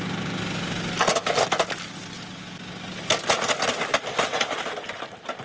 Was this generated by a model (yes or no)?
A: no